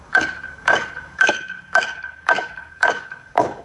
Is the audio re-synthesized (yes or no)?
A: yes